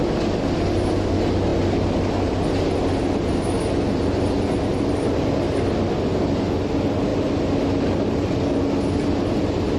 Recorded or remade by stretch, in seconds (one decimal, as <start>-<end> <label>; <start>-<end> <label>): 0.0-9.8 recorded